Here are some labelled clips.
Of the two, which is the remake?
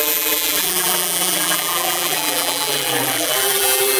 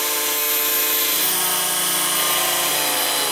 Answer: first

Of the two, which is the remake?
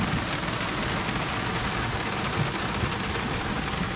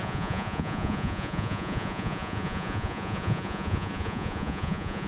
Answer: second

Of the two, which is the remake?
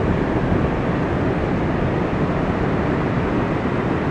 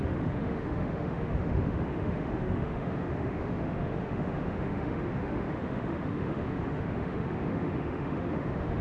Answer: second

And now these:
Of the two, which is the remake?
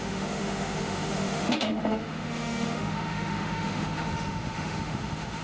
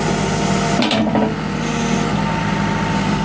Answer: first